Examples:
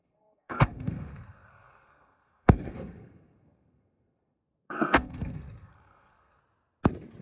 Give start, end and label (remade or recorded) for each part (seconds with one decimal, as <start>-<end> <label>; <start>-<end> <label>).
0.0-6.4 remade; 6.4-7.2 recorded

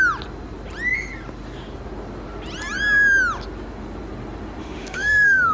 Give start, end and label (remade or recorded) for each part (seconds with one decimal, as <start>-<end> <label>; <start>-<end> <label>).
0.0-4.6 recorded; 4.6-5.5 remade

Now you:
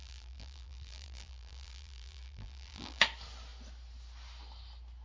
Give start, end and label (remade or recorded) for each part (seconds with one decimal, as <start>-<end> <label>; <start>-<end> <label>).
0.0-3.0 remade; 3.0-5.0 recorded

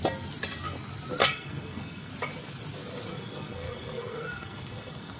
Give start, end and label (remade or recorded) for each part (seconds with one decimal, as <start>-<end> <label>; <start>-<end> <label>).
0.0-1.2 recorded; 1.2-2.1 remade; 2.1-3.1 recorded; 3.1-5.2 remade

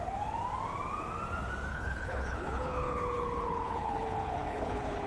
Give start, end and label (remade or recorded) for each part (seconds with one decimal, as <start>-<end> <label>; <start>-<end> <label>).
0.0-1.7 recorded; 1.7-5.1 remade